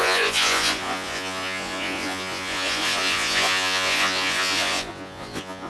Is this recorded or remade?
remade